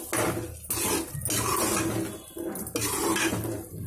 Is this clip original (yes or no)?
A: yes